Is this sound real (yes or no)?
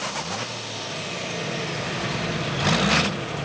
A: yes